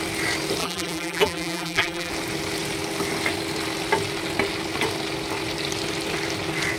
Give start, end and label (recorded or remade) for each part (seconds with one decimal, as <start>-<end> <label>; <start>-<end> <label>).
0.0-0.6 recorded; 0.6-2.1 remade; 2.1-6.8 recorded